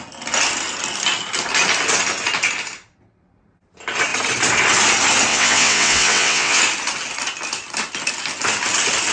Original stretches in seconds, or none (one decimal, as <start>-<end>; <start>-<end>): 0.0-5.3; 6.6-9.1